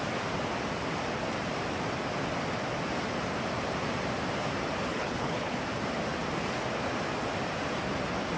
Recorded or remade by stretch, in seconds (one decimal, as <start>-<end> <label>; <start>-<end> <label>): 0.0-4.9 recorded; 4.9-5.6 remade; 5.6-8.4 recorded